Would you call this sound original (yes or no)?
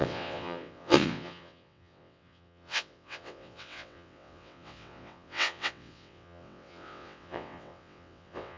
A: no